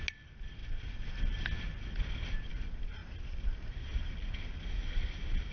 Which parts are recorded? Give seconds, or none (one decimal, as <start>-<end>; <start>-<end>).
0.0-5.5